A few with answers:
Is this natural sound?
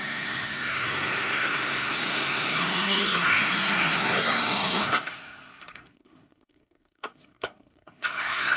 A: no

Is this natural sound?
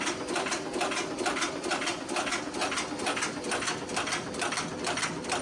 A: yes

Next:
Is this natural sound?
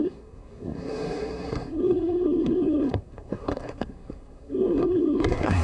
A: no